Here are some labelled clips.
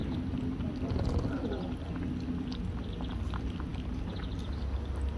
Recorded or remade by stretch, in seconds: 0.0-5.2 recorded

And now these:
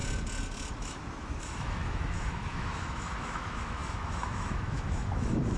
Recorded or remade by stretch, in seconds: 0.0-0.7 recorded; 0.7-5.6 remade

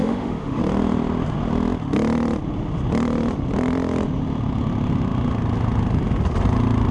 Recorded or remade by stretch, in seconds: 0.0-0.6 remade; 0.6-6.9 recorded

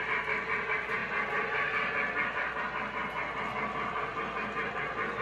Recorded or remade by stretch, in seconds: 0.0-5.2 recorded

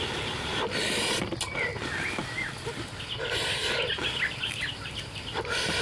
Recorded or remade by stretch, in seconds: 0.0-5.8 recorded

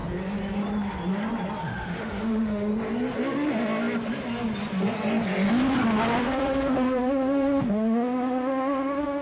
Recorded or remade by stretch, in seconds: 0.0-1.6 recorded; 1.6-2.7 remade; 2.7-6.2 recorded; 6.2-9.2 remade

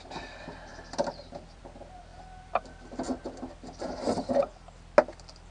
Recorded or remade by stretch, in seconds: 0.0-5.5 recorded

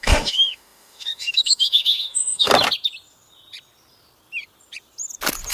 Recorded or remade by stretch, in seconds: 0.0-2.5 remade; 2.5-5.5 recorded